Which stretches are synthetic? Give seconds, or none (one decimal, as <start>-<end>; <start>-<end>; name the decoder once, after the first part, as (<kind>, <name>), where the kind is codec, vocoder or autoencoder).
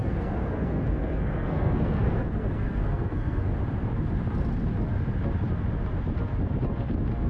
0.0-3.5 (codec, SNAC)